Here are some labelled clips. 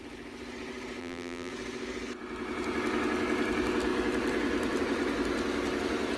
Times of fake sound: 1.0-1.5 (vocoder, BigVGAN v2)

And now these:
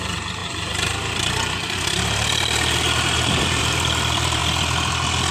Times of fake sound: 0.0-4.4 (vocoder, BigVGAN v2)

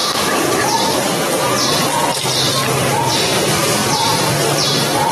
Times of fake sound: 0.0-0.6 (vocoder, BigVGAN v2)